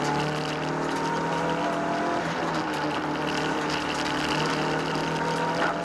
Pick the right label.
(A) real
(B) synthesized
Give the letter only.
A